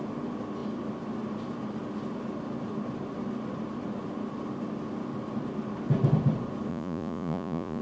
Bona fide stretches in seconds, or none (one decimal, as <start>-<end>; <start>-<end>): 0.0-6.7